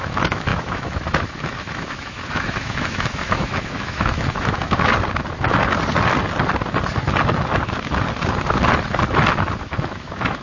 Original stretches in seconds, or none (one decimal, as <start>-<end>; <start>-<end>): 4.9-9.6

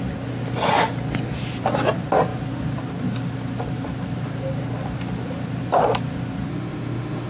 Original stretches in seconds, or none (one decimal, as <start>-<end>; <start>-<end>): 0.0-6.5

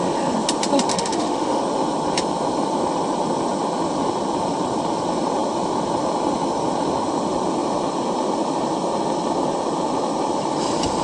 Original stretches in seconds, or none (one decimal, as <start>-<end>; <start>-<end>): 0.0-0.9; 1.6-11.0

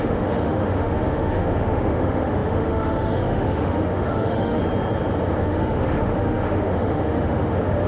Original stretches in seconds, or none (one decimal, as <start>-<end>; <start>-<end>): 4.6-5.4

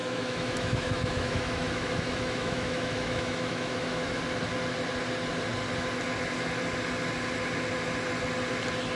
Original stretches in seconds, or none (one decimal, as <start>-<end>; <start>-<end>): 4.2-9.0

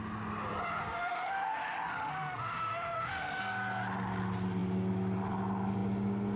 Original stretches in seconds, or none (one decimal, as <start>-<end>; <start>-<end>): 0.0-0.8; 3.4-6.4